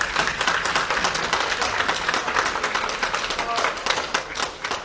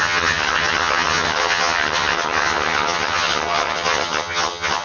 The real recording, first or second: first